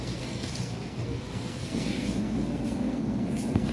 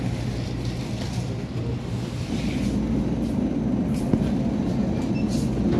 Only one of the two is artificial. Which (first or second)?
first